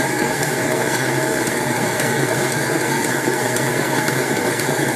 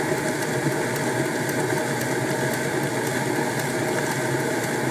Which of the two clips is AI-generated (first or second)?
first